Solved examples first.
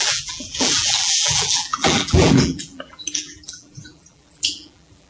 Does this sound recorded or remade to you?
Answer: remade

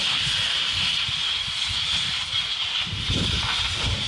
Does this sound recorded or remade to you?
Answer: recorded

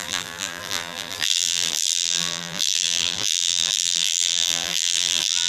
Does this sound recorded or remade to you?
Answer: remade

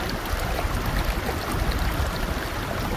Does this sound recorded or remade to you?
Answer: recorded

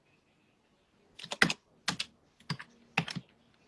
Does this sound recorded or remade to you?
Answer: recorded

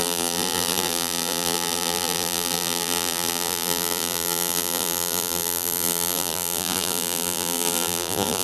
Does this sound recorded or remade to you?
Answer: remade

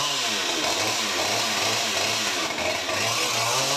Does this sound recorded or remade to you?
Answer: recorded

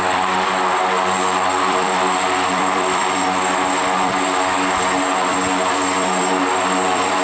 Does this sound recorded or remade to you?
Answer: remade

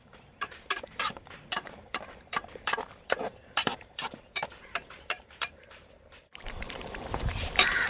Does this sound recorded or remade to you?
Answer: remade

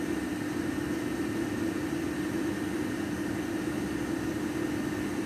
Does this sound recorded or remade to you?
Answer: recorded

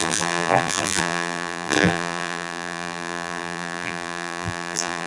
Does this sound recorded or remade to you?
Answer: remade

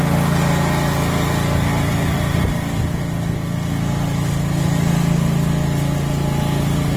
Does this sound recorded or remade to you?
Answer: recorded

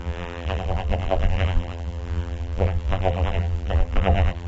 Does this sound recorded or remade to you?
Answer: remade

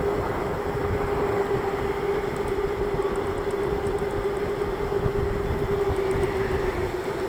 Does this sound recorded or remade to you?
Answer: recorded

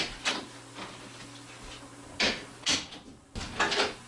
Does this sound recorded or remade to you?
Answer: recorded